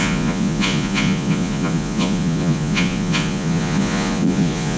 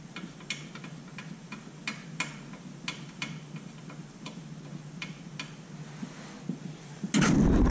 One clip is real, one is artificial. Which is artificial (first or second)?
first